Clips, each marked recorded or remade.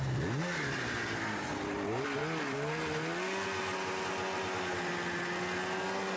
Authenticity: recorded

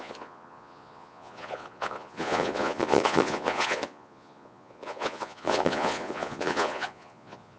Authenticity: remade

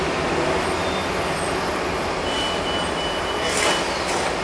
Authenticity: recorded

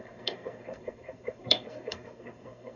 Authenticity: remade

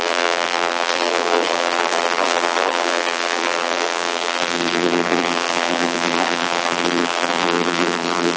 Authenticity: remade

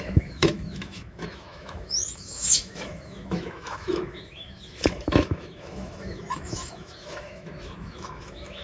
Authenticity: remade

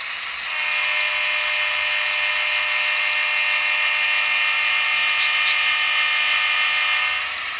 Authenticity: recorded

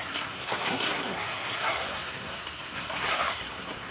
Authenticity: remade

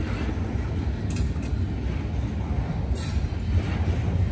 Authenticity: recorded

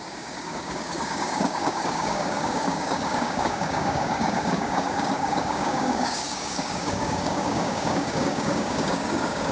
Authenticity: remade